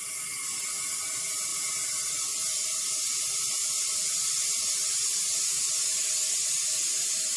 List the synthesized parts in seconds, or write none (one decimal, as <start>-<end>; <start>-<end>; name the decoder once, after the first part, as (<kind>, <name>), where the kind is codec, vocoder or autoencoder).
none

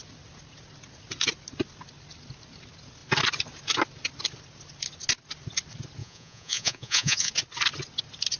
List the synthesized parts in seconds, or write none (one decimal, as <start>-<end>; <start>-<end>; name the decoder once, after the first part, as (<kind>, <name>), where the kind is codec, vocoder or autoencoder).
6.0-7.3 (vocoder, Vocos)

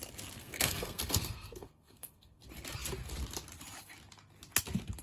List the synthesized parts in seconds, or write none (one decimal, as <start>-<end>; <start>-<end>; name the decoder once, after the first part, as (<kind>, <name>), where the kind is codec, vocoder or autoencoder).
0.4-2.4 (codec, SNAC)

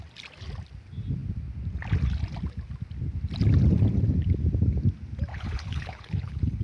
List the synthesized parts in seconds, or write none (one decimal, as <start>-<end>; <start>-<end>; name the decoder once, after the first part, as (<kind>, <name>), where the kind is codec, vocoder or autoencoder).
5.3-6.6 (codec, HILCodec)

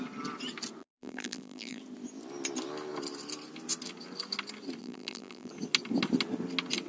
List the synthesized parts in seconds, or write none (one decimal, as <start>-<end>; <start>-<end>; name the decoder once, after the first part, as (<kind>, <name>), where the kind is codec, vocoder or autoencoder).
0.8-1.8 (vocoder, BigVGAN v2); 4.8-5.5

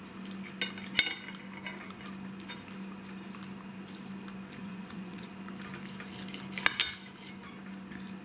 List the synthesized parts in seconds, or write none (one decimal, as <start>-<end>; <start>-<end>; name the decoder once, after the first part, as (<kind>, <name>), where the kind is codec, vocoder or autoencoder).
4.6-5.3 (vocoder, Vocos)